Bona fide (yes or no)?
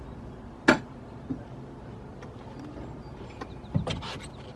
yes